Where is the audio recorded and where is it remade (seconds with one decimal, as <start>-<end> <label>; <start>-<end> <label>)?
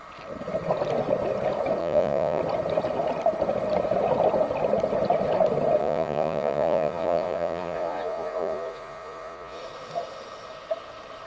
0.0-1.8 recorded; 1.8-2.4 remade; 2.4-5.8 recorded; 5.8-9.6 remade; 9.6-11.3 recorded